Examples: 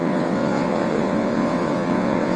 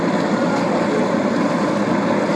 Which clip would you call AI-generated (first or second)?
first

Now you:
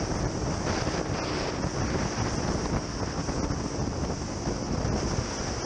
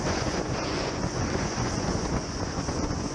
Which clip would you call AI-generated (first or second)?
second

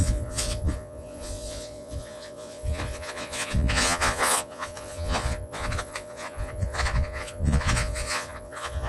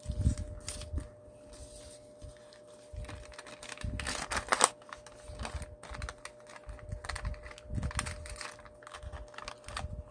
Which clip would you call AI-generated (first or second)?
first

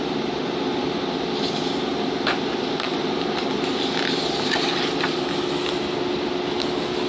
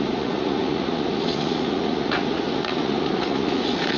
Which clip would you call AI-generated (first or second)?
second